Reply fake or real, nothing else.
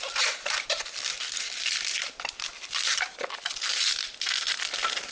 fake